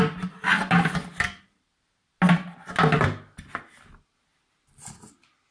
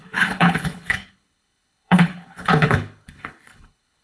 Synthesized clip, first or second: second